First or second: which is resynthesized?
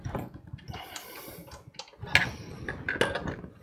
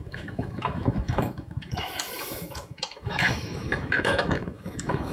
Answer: second